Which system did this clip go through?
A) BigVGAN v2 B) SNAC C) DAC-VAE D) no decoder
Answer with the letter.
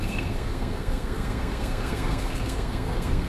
B